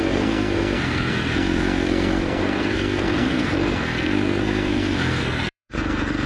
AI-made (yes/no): yes